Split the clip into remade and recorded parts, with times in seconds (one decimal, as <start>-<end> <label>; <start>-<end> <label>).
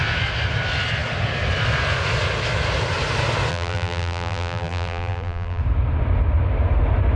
0.0-3.5 recorded; 3.5-5.6 remade; 5.6-7.2 recorded